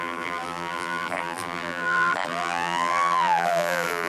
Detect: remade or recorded remade